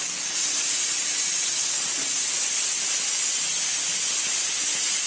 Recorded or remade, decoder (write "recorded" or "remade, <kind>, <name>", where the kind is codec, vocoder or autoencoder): recorded